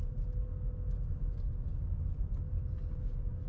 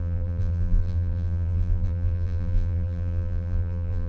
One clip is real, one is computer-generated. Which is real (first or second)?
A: first